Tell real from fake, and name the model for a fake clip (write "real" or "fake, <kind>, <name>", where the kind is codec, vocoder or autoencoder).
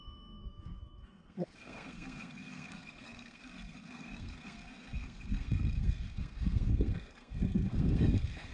fake, codec, SNAC